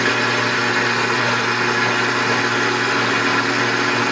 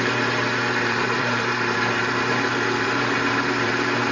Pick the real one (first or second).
first